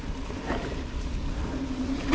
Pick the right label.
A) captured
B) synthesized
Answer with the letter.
A